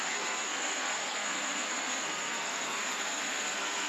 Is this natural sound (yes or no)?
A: no